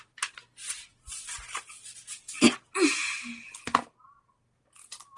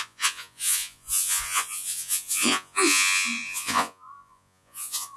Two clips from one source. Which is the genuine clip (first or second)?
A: first